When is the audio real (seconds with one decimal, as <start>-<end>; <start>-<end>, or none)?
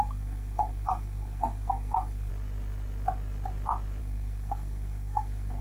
2.3-4.0